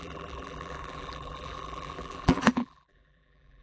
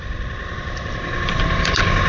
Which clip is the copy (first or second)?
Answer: first